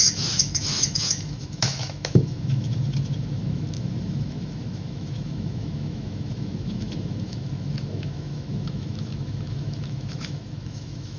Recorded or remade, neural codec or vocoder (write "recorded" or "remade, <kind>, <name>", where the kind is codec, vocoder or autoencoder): remade, autoencoder, DAC-VAE